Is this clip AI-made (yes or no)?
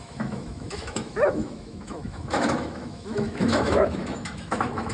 yes